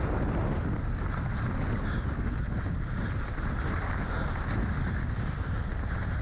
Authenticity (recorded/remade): recorded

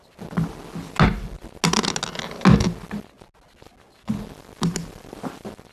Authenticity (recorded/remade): recorded